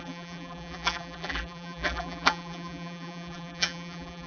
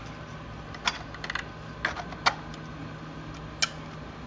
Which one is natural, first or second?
second